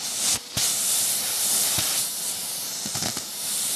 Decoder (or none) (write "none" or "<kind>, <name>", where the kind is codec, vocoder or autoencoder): none